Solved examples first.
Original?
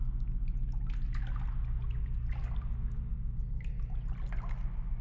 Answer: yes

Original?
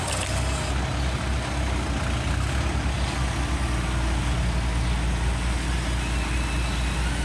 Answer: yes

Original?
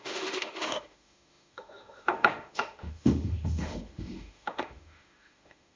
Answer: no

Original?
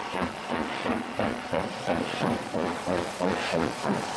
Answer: no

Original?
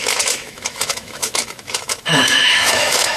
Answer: no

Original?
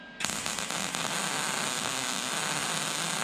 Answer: yes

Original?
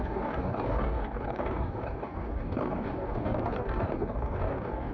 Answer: no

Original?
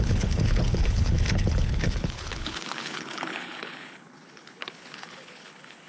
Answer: no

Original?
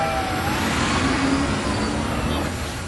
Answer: yes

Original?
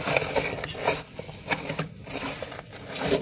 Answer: yes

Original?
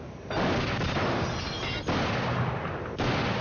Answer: yes